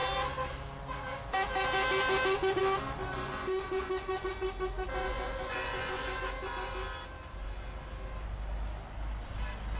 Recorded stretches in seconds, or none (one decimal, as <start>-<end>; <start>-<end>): 0.0-3.0; 4.3-5.0; 6.2-9.8